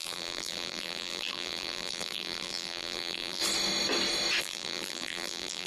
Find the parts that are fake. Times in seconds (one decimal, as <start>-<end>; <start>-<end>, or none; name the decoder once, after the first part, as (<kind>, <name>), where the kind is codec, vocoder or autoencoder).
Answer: 0.0-3.4 (vocoder, BigVGAN v2); 4.4-5.7